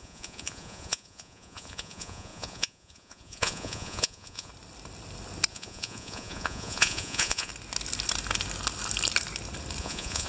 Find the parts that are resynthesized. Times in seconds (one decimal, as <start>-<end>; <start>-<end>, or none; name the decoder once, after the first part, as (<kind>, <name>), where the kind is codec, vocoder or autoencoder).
0.0-4.5 (vocoder, Vocos); 5.5-7.5; 9.8-10.3

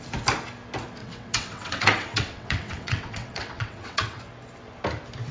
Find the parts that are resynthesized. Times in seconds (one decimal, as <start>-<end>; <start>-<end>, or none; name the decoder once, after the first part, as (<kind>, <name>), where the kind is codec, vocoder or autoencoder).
1.0-4.2 (vocoder, WaveNeXt)

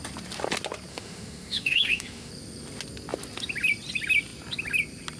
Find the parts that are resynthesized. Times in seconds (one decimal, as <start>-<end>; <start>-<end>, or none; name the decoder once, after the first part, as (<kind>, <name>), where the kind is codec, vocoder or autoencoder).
0.9-2.3 (autoencoder, DAC-VAE)

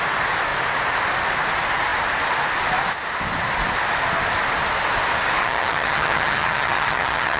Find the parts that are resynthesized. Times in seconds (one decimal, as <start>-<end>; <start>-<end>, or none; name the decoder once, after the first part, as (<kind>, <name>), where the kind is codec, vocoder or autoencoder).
5.4-7.4 (vocoder, HiFi-GAN)

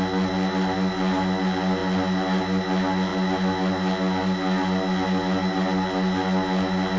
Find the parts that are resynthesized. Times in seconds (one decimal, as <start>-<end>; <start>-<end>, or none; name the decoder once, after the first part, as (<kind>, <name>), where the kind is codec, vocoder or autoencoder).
none

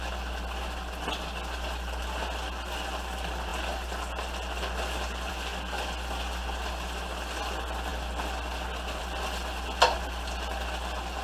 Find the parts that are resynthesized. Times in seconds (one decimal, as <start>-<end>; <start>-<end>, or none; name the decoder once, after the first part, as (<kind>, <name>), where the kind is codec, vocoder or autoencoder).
none